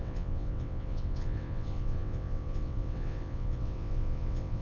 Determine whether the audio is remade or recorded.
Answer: remade